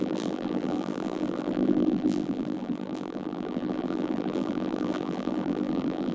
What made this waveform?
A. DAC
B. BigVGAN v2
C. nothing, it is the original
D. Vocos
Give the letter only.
B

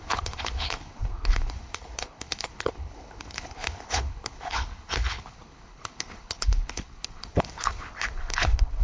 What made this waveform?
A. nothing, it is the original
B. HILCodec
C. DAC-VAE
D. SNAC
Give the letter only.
B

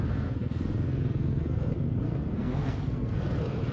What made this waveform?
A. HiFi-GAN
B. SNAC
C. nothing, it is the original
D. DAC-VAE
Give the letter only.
B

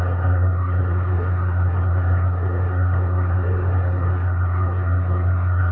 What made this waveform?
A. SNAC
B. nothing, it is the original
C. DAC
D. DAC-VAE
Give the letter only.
A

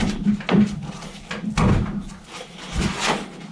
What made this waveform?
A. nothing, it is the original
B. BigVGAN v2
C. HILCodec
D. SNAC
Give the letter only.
A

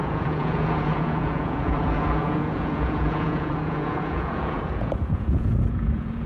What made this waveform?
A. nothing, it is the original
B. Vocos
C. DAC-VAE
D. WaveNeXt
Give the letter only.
B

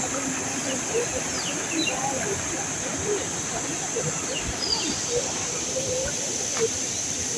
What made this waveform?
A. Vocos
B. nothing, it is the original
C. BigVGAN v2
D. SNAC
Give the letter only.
C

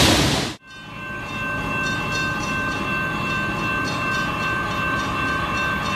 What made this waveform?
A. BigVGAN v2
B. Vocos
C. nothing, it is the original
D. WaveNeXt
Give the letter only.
C